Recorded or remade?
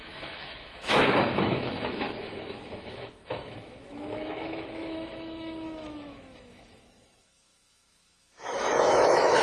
remade